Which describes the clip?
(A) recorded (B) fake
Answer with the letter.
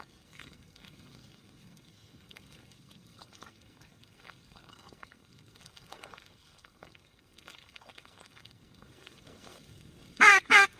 B